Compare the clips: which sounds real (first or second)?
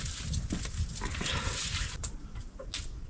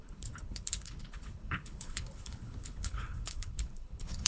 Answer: first